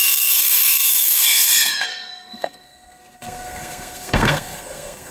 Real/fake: fake